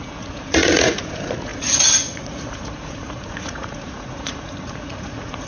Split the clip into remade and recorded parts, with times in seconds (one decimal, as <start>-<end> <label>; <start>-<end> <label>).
0.0-5.5 remade